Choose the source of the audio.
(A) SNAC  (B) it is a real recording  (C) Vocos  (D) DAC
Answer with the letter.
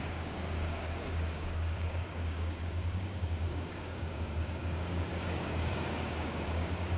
D